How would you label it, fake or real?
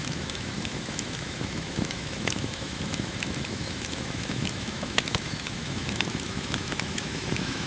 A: fake